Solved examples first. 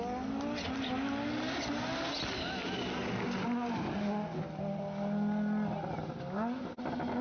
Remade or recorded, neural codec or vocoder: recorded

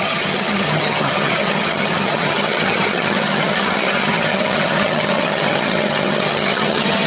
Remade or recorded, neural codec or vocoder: remade, vocoder, HiFi-GAN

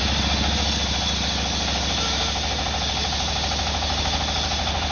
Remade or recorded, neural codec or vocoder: recorded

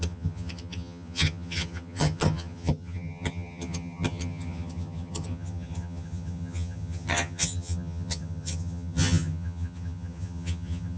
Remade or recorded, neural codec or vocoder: remade, vocoder, HiFi-GAN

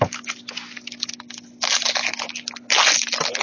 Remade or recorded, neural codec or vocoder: recorded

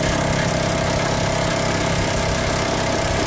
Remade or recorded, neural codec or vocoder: recorded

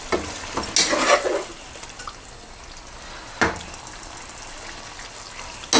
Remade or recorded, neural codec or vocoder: recorded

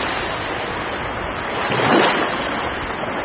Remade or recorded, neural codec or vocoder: recorded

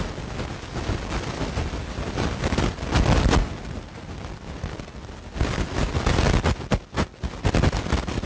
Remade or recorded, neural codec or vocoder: recorded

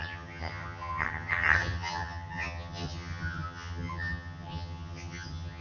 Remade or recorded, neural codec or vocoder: remade, vocoder, HiFi-GAN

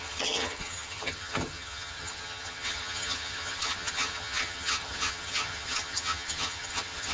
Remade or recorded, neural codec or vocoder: remade, vocoder, HiFi-GAN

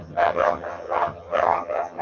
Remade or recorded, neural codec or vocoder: remade, vocoder, HiFi-GAN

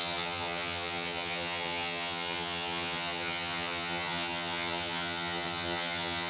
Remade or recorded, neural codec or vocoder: remade, vocoder, HiFi-GAN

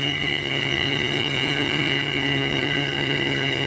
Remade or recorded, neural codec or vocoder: remade, vocoder, HiFi-GAN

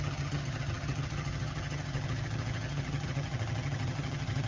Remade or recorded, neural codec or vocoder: remade, vocoder, HiFi-GAN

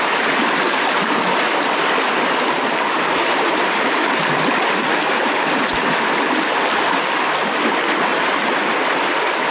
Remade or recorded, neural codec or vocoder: recorded